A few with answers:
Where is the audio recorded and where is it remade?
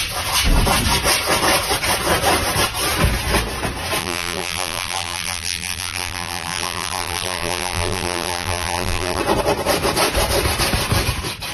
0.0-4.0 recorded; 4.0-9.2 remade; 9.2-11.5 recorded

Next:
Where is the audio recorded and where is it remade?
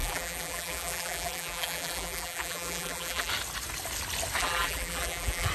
0.0-3.3 remade; 3.3-4.4 recorded; 4.4-5.5 remade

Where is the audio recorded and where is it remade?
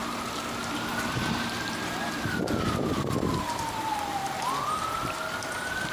0.0-3.5 recorded; 3.5-4.2 remade; 4.2-4.7 recorded; 4.7-5.9 remade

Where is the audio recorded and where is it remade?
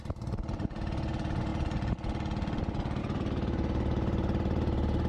0.0-1.5 remade; 1.5-3.0 recorded; 3.0-5.1 remade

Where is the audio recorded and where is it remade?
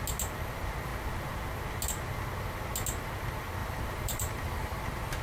0.0-3.6 recorded; 3.6-4.8 remade; 4.8-5.2 recorded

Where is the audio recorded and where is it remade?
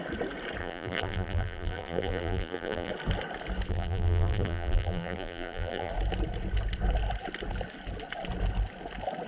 0.0-0.6 recorded; 0.6-2.9 remade; 2.9-3.7 recorded; 3.7-5.9 remade; 5.9-9.3 recorded